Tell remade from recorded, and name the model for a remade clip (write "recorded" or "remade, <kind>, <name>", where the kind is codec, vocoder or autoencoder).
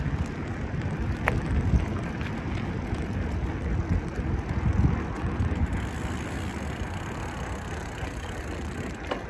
recorded